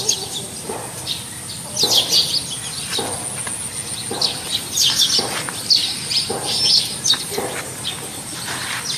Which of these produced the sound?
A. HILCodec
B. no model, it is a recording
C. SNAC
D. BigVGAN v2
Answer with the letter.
B